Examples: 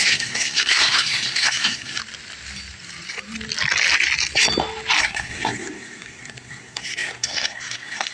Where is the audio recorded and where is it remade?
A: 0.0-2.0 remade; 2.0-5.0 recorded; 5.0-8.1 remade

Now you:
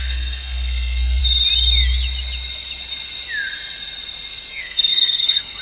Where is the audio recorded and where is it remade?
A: 0.0-1.2 remade; 1.2-4.5 recorded; 4.5-5.6 remade

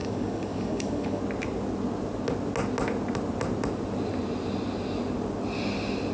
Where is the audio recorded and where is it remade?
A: 0.0-1.2 remade; 1.2-6.1 recorded

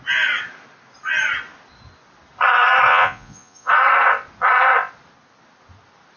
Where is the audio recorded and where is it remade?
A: 0.0-2.9 recorded; 2.9-3.7 remade; 3.7-6.2 recorded

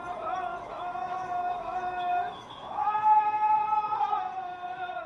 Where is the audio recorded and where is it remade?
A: 0.0-0.5 recorded; 0.5-3.6 remade; 3.6-5.1 recorded

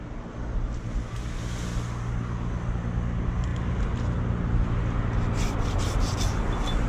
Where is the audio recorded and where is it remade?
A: 0.0-6.9 recorded